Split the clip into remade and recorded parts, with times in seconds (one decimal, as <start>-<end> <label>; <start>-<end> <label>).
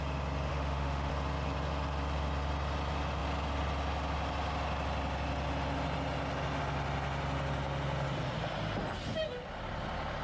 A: 0.0-0.5 recorded; 0.5-1.1 remade; 1.1-10.2 recorded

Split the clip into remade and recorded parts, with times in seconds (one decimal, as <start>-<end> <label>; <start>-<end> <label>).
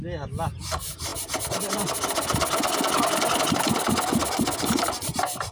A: 0.0-5.5 recorded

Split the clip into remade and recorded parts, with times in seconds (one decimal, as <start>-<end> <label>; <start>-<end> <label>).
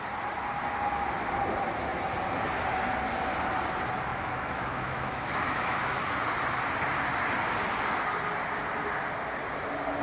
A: 0.0-4.1 recorded; 4.1-6.0 remade; 6.0-10.0 recorded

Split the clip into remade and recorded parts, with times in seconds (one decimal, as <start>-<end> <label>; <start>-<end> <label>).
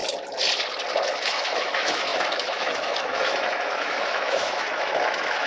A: 0.0-1.1 recorded; 1.1-5.5 remade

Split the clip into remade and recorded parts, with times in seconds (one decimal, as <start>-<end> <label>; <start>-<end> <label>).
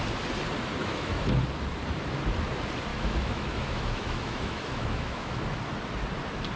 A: 0.0-0.8 recorded; 0.8-1.3 remade; 1.3-2.9 recorded; 2.9-5.4 remade; 5.4-6.6 recorded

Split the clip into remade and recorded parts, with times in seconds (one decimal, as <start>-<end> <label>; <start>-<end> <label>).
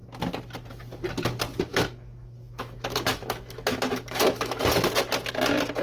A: 0.0-1.7 recorded; 1.7-4.6 remade; 4.6-5.8 recorded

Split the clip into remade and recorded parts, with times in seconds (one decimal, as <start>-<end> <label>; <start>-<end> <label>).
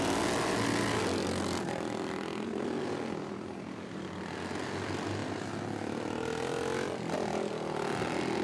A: 0.0-8.4 recorded